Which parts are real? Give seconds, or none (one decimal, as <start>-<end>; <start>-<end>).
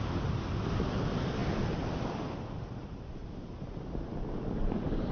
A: 1.4-2.6; 3.2-5.1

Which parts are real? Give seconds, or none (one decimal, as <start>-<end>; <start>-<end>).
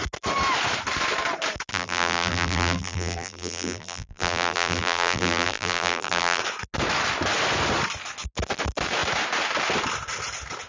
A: 0.0-1.7; 6.4-10.7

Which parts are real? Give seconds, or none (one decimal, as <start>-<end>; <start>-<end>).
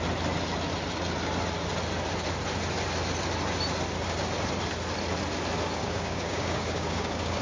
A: 0.0-5.8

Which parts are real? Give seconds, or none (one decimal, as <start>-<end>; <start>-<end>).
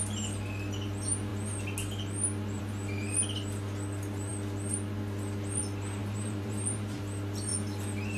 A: 0.0-6.0; 7.0-8.2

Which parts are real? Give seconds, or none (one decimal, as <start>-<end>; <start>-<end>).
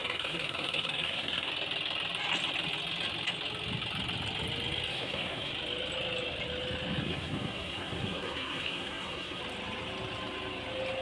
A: 1.5-4.9; 5.5-7.0; 9.4-11.0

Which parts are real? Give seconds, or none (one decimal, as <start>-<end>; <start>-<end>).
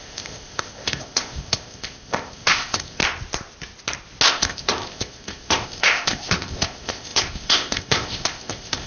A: 3.0-4.3